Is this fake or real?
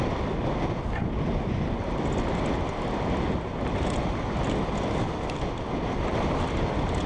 real